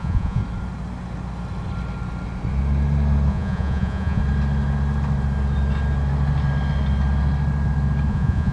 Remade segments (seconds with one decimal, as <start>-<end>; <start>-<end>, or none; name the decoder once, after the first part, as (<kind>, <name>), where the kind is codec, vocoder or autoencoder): 0.0-0.4 (vocoder, Vocos); 3.3-4.2; 8.1-8.5